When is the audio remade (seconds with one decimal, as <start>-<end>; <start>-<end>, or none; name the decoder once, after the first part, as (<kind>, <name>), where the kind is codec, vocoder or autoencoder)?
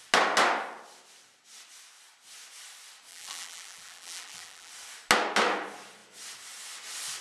3.1-4.7 (vocoder, BigVGAN v2)